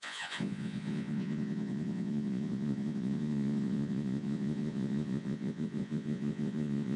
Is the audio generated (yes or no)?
yes